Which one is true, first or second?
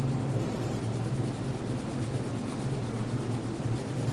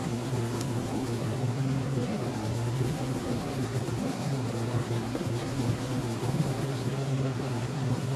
first